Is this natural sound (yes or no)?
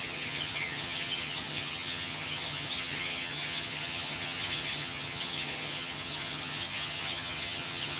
no